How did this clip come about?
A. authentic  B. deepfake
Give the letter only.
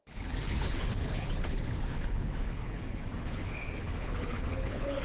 B